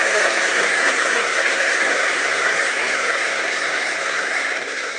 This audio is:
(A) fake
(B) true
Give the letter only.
A